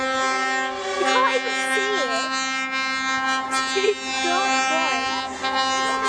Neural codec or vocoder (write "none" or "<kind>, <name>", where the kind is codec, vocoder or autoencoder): none